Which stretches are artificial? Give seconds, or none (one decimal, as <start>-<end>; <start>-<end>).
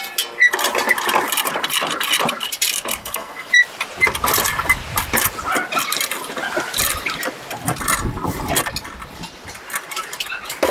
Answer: 3.0-3.5